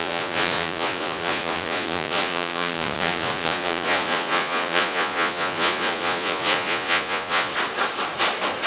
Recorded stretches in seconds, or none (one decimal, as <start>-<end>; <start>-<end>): 7.5-8.7